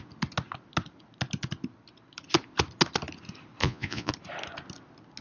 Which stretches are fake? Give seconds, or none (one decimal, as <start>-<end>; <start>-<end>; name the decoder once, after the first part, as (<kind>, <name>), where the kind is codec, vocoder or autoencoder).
3.6-4.1 (vocoder, Vocos)

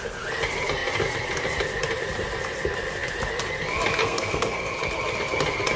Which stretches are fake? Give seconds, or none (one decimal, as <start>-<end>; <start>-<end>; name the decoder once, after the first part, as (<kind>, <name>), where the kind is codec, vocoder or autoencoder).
4.0-4.7 (codec, SNAC)

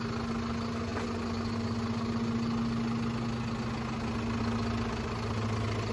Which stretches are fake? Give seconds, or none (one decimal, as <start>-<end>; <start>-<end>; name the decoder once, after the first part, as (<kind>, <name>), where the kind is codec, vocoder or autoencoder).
none

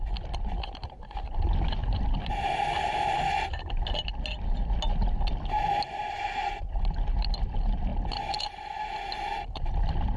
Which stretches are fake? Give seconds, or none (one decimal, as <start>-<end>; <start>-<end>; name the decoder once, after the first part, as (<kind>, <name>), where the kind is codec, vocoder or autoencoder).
1.8-2.3 (vocoder, BigVGAN v2); 7.9-8.8

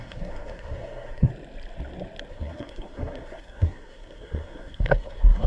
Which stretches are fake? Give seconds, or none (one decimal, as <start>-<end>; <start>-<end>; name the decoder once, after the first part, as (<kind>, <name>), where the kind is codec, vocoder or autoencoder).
0.0-1.3 (codec, SNAC); 2.3-5.5

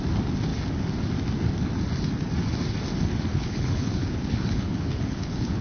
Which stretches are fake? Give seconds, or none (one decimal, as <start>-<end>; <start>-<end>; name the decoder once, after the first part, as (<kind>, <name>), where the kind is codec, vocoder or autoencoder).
3.3-5.6 (codec, HILCodec)

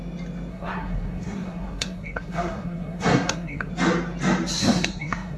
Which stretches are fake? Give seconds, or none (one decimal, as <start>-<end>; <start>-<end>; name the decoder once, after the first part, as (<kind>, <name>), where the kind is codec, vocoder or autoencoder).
0.5-3.7 (codec, SNAC); 4.6-5.4

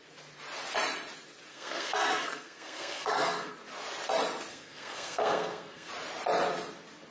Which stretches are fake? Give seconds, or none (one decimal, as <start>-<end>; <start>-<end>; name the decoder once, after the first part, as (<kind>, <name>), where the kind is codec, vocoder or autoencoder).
1.5-3.5 (codec, SNAC); 4.5-5.9